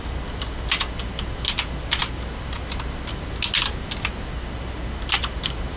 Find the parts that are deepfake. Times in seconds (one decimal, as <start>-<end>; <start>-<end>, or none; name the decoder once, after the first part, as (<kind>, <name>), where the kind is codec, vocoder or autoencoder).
none